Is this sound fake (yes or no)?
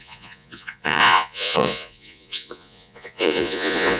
yes